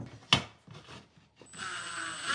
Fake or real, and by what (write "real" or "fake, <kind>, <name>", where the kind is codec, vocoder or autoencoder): real